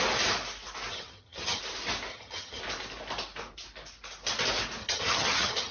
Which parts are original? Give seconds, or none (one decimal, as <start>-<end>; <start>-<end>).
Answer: 0.0-0.9; 1.6-2.1; 2.6-4.8

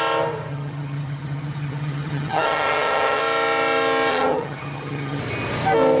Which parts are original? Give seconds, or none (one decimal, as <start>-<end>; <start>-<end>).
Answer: 0.0-0.5; 3.2-4.1; 5.2-6.0

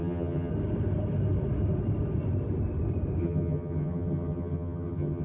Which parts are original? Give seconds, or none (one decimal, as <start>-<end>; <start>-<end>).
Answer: 0.5-3.2

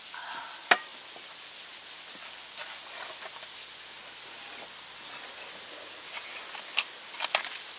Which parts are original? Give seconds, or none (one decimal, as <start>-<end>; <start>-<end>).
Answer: 0.0-7.8

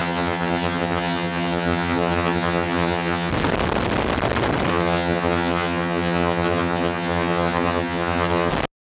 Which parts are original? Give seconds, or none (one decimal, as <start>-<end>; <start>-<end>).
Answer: 3.3-4.7; 8.5-8.9